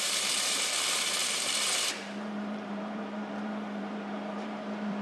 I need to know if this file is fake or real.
fake